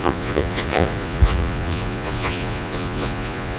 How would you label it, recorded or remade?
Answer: remade